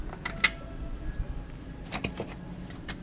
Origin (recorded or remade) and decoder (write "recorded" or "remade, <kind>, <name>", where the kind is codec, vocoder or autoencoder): recorded